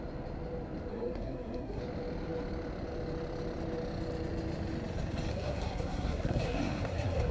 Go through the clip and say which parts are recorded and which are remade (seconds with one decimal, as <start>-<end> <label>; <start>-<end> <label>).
0.0-0.9 recorded; 0.9-1.8 remade; 1.8-5.3 recorded; 5.3-7.3 remade